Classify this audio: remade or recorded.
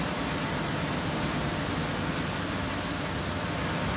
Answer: recorded